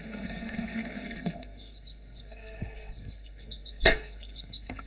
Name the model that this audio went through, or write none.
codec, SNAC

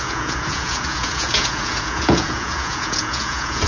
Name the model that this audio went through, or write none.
vocoder, Vocos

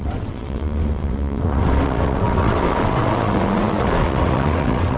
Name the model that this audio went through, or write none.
vocoder, WaveNeXt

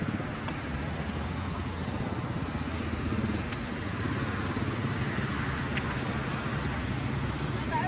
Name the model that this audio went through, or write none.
none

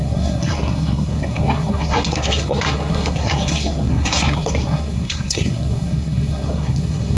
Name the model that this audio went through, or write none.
codec, SNAC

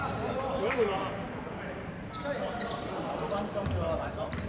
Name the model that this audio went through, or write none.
none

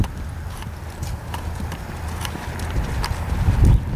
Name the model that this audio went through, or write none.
none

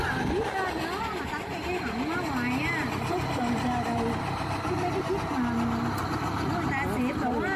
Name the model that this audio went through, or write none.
none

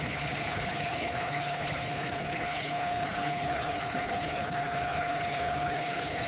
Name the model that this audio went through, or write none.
codec, HILCodec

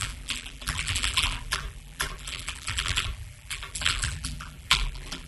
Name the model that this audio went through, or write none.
vocoder, BigVGAN v2